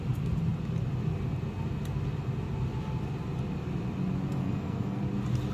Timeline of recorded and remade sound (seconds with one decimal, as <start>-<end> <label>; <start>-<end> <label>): 0.0-4.4 recorded; 4.4-5.0 remade; 5.0-5.5 recorded